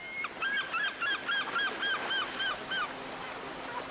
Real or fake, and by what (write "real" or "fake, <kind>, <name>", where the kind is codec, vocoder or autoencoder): real